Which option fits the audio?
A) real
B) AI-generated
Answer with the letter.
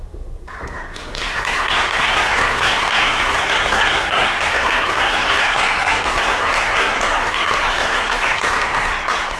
B